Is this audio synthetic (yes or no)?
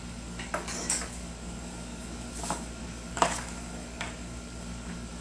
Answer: yes